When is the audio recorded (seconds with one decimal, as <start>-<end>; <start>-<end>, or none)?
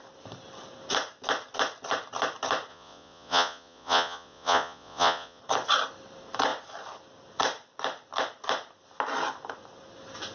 0.0-2.7; 5.4-10.3